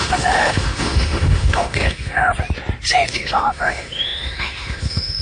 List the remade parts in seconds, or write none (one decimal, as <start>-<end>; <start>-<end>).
0.0-2.3; 3.1-5.2